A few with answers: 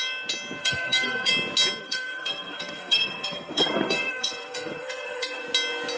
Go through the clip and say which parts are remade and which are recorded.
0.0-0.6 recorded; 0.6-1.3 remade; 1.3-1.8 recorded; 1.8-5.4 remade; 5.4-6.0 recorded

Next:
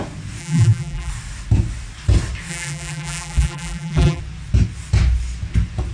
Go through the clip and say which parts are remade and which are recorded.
0.0-0.4 recorded; 0.4-1.1 remade; 1.1-2.5 recorded; 2.5-4.2 remade; 4.2-5.9 recorded